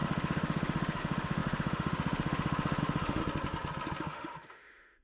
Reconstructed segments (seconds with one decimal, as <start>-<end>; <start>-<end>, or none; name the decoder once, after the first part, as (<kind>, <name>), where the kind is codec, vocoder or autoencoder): 0.0-3.2 (autoencoder, DAC-VAE); 4.0-5.0